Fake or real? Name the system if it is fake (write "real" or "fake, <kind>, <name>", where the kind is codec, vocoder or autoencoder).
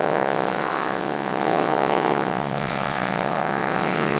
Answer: fake, vocoder, WaveNeXt